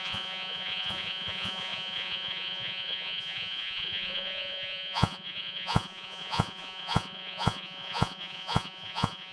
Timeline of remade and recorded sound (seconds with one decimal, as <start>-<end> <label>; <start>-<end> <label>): 0.0-9.3 remade